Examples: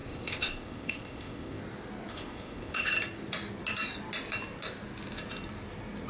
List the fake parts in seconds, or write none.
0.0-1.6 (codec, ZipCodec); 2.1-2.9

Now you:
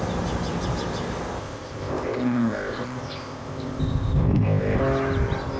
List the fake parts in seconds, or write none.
1.4-4.8 (codec, ZipCodec)